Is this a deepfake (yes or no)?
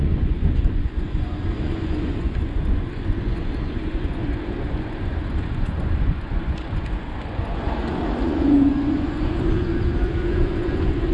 yes